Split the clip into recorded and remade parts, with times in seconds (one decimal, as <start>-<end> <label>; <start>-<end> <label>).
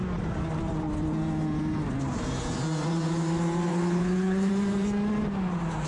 0.0-3.7 recorded; 3.7-4.5 remade; 4.5-5.9 recorded